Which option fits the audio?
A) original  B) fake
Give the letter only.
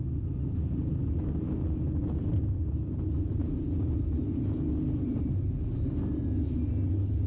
A